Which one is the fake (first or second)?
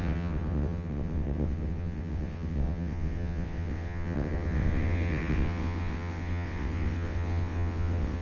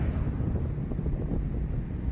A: first